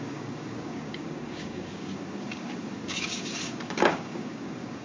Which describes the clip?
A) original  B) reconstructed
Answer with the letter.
B